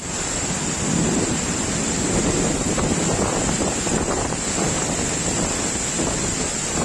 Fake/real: real